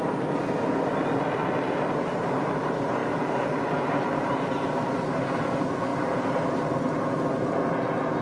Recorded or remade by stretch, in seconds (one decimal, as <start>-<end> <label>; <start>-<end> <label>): 0.0-3.0 recorded; 3.0-3.5 remade; 3.5-8.2 recorded